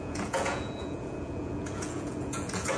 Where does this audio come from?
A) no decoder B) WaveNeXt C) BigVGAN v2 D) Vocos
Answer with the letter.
D